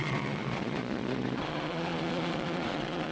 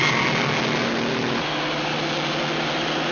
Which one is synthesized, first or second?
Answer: first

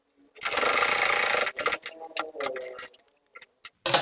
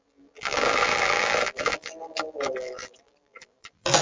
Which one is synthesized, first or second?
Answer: second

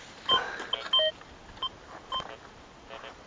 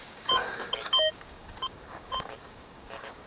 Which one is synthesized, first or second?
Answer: second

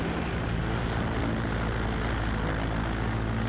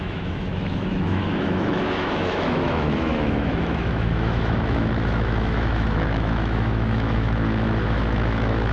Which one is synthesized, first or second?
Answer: second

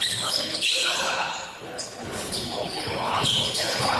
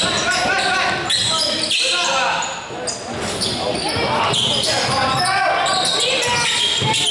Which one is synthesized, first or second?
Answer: first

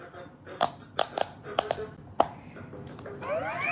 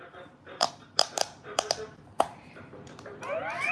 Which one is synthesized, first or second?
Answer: second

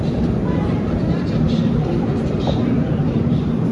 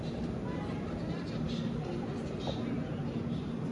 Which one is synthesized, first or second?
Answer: first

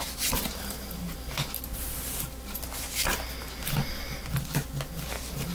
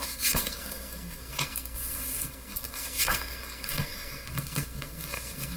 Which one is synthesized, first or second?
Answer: second